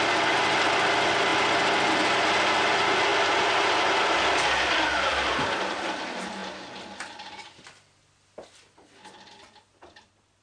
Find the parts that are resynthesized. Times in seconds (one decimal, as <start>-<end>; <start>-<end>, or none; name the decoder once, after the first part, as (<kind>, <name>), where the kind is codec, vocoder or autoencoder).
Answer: 3.1-5.4 (vocoder, BigVGAN v2)